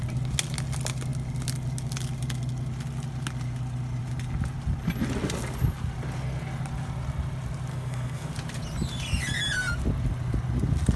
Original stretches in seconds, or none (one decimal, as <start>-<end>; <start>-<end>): 0.0-7.7; 8.3-11.0